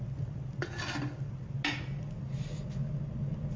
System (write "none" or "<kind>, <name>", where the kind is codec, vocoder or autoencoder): none